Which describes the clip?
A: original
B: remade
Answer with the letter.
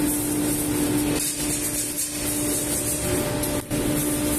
A